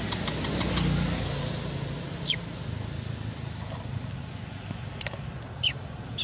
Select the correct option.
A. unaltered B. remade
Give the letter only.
A